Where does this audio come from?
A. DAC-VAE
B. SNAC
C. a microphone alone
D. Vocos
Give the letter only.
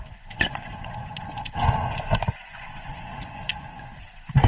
D